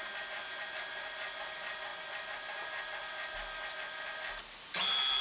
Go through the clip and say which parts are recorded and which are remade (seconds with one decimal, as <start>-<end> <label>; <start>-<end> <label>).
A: 0.0-5.2 recorded